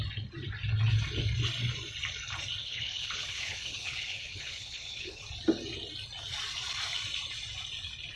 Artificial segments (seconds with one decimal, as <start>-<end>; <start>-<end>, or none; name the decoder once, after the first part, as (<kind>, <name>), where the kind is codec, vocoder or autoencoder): 2.6-5.2 (codec, HILCodec)